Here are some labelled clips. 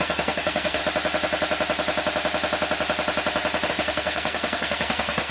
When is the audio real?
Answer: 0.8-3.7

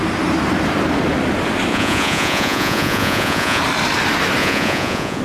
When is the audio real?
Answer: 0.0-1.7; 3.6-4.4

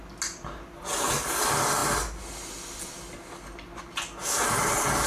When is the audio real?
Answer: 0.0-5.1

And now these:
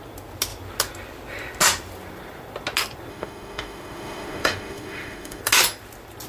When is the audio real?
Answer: 0.0-3.1; 5.4-6.3

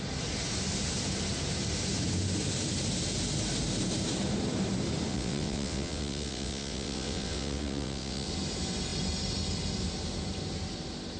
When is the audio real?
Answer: 0.0-5.1; 8.3-11.2